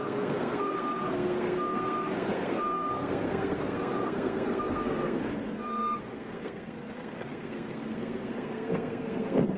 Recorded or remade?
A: remade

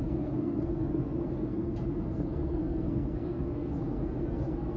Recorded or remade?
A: remade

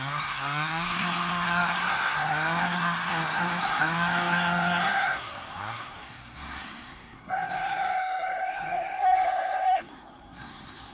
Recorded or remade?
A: remade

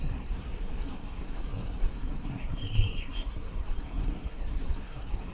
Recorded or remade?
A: remade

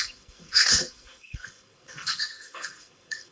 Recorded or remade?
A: remade